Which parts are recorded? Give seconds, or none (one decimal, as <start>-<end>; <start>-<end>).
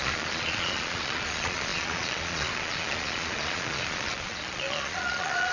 none